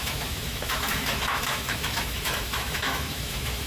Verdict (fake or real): fake